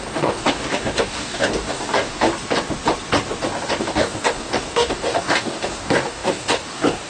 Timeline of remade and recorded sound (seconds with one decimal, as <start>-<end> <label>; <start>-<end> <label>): 0.0-2.3 remade; 2.3-3.8 recorded; 3.8-7.1 remade